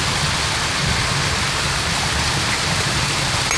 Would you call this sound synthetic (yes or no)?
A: no